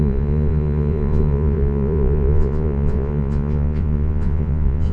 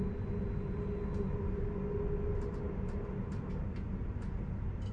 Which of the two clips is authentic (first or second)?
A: second